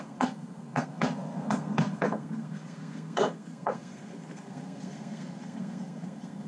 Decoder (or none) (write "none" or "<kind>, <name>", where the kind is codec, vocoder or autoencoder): codec, SNAC